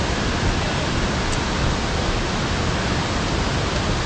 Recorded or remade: recorded